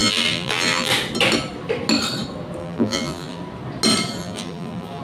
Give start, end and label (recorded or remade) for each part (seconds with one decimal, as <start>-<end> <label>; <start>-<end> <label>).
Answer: 0.0-0.9 remade; 0.9-2.6 recorded; 2.6-3.4 remade; 3.4-4.2 recorded; 4.2-5.0 remade